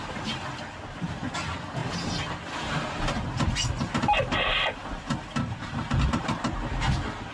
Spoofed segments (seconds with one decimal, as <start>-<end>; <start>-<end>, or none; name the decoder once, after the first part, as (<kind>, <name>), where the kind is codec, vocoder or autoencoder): 4.8-6.2 (vocoder, BigVGAN v2)

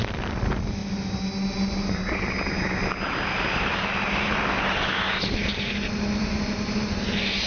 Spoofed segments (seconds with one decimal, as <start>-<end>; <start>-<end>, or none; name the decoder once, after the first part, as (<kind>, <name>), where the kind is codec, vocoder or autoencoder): none

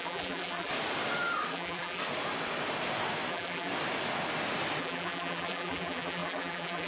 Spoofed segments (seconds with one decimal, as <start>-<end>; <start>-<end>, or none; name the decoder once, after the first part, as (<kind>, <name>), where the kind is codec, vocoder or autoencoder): 0.0-0.7 (vocoder, BigVGAN v2); 1.5-2.0; 3.3-3.7; 4.8-6.9